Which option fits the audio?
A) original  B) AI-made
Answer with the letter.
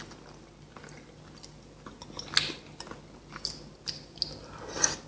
A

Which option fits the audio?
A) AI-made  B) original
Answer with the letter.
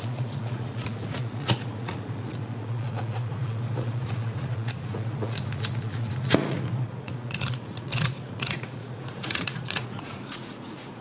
A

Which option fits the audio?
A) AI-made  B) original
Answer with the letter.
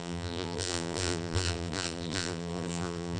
A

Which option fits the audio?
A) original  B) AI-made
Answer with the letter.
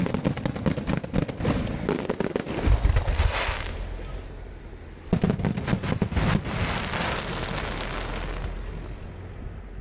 A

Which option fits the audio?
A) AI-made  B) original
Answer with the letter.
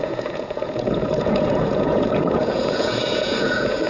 A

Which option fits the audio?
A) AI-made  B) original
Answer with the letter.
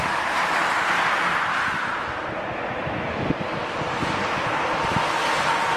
B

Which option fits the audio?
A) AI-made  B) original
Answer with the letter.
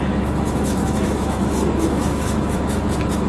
A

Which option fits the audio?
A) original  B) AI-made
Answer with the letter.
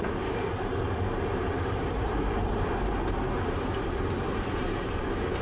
B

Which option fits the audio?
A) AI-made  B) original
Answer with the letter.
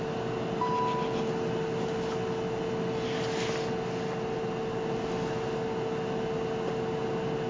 B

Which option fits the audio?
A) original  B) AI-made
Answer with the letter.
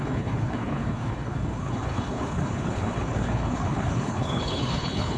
B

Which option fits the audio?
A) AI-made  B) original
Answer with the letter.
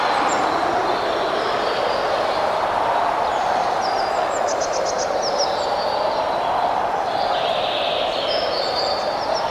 B